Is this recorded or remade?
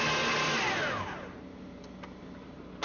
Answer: recorded